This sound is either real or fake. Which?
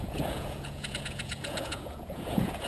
fake